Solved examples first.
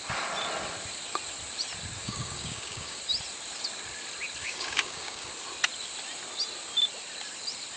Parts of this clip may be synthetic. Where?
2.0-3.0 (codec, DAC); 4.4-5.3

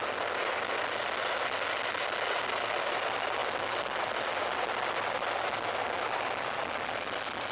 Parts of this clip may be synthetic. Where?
none